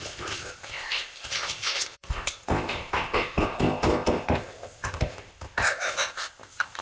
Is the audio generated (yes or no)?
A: yes